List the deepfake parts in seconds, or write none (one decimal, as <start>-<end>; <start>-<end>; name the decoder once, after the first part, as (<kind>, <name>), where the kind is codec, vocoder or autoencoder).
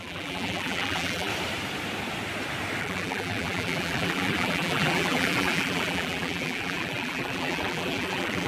0.0-1.3 (vocoder, BigVGAN v2); 2.8-8.5